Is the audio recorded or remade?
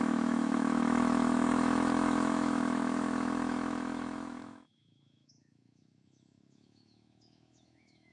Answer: remade